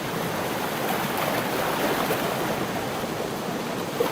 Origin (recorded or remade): recorded